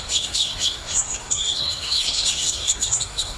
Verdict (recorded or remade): remade